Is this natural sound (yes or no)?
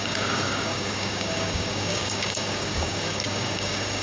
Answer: no